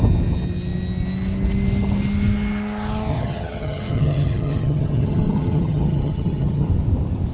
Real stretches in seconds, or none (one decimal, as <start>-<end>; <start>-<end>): 0.0-3.1; 6.7-7.3